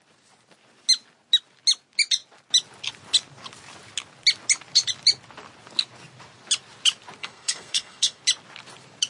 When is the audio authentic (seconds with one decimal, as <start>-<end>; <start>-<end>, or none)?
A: 0.0-7.2; 8.2-9.1